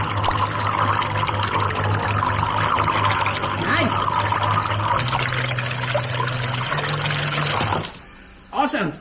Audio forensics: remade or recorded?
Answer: recorded